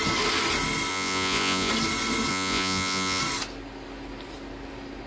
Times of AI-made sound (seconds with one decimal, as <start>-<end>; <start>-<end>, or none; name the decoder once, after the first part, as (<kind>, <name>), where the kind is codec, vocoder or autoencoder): 0.9-1.7 (vocoder, Vocos); 2.3-3.2